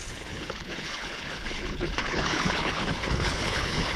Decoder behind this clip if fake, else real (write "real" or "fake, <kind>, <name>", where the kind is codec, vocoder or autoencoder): fake, codec, HILCodec